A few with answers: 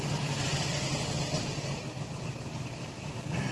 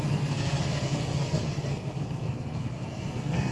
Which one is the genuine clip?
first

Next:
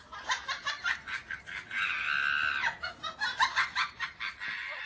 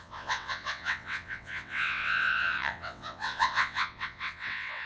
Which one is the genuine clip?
first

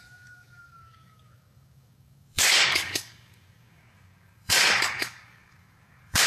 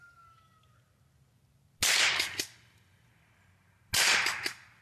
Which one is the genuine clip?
second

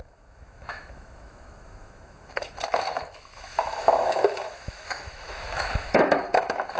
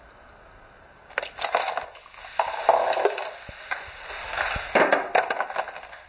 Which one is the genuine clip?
second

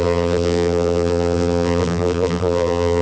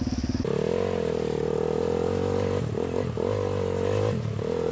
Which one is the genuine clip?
second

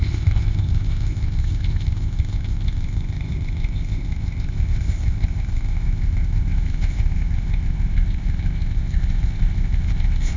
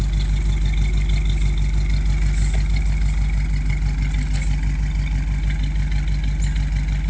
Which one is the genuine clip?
second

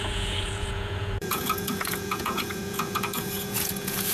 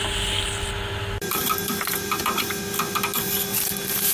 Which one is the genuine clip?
second